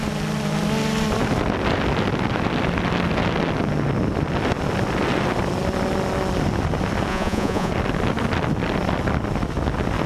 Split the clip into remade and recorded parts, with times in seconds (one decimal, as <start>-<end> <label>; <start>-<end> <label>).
0.0-7.1 recorded; 7.1-7.7 remade; 7.7-10.1 recorded

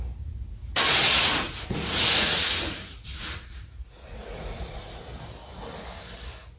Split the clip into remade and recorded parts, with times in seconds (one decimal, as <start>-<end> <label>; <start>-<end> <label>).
0.0-1.2 recorded; 1.2-5.0 remade; 5.0-6.6 recorded

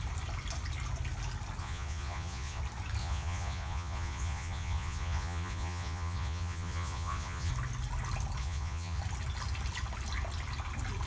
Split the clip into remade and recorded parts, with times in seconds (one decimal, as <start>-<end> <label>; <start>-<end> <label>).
0.0-1.6 recorded; 1.6-2.6 remade; 2.6-3.0 recorded; 3.0-7.5 remade; 7.5-8.4 recorded; 8.4-9.0 remade; 9.0-11.1 recorded

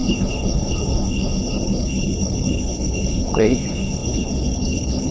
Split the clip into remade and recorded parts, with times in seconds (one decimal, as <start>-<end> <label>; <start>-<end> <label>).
0.0-5.1 remade

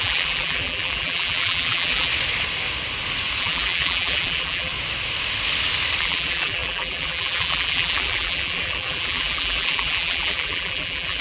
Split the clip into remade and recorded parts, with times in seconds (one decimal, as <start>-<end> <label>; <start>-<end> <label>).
0.0-2.1 remade; 2.1-3.4 recorded; 3.4-4.7 remade; 4.7-6.0 recorded; 6.0-11.2 remade